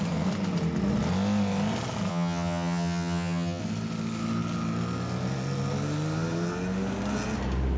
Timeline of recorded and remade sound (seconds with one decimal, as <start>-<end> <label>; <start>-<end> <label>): 0.0-2.1 recorded; 2.1-3.6 remade; 3.6-7.8 recorded